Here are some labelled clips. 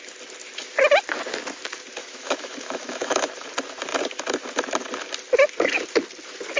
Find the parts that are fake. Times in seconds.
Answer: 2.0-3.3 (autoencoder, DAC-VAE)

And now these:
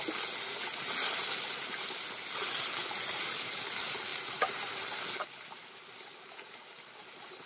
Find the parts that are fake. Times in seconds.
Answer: none

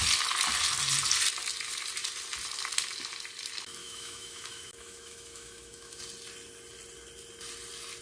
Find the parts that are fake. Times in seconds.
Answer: 3.8-6.0 (autoencoder, DAC-VAE)

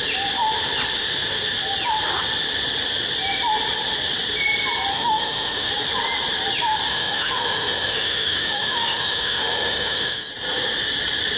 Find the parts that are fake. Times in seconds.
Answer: 4.9-5.7 (autoencoder, DAC-VAE); 6.9-10.3

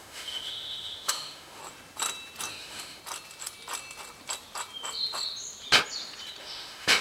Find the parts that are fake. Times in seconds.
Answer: 0.0-1.6 (autoencoder, DAC-VAE); 2.5-3.0; 6.4-7.0